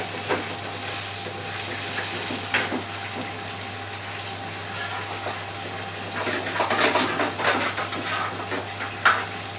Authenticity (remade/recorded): recorded